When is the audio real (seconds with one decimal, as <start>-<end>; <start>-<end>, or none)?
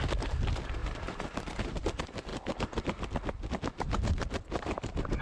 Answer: 0.0-0.8; 1.8-5.2